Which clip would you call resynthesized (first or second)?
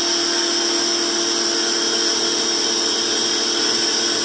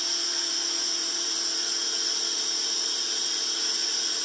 second